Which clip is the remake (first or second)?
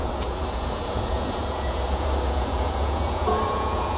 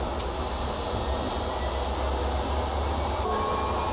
first